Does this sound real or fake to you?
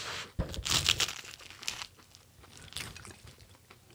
real